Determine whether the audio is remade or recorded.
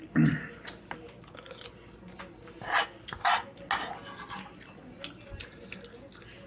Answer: recorded